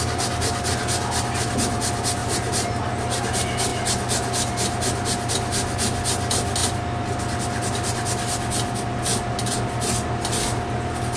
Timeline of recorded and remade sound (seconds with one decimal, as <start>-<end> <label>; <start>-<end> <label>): 0.0-2.2 recorded; 2.2-2.8 remade; 2.8-11.2 recorded